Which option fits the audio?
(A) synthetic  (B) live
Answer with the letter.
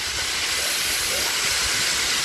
B